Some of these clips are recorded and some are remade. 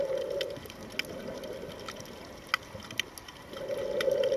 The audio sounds recorded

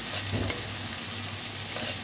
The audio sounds recorded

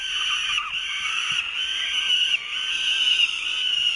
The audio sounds recorded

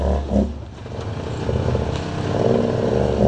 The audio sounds recorded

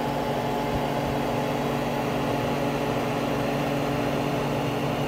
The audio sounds recorded